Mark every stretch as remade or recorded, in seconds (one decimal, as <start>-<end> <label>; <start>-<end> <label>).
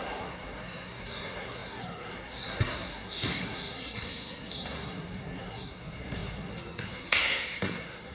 0.0-8.1 remade